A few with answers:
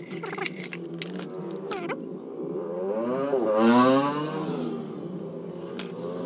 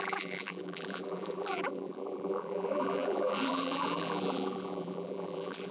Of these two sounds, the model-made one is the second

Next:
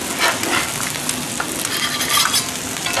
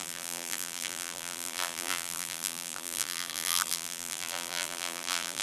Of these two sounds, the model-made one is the second